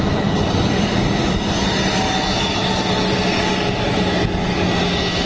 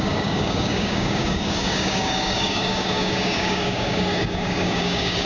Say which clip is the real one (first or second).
first